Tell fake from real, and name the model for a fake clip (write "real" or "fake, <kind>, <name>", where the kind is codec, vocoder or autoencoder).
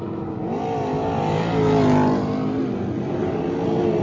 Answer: real